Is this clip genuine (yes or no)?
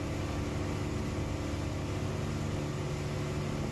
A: yes